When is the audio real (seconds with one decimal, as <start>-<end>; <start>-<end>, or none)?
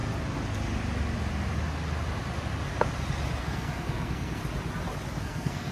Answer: 0.0-3.4; 4.4-5.2